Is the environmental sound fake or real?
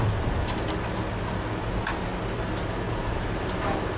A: real